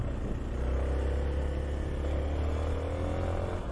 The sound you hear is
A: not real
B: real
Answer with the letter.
B